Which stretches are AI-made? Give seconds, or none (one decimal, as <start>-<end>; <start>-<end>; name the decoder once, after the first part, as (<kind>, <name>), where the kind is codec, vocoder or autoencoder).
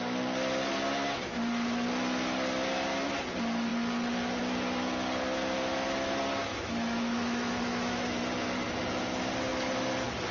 6.5-8.2 (autoencoder, DAC-VAE)